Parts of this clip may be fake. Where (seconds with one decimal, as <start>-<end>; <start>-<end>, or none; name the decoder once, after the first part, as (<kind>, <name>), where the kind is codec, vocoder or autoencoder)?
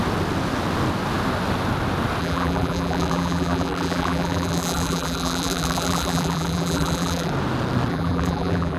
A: 2.2-7.3 (vocoder, BigVGAN v2); 7.9-8.8